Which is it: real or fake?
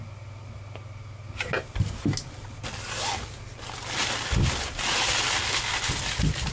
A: real